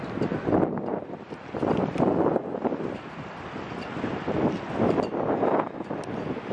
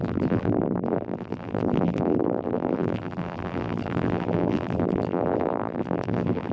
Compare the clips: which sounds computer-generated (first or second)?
second